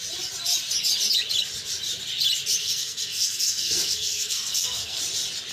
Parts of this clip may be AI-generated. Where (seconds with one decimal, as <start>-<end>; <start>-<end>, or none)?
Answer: 2.6-5.0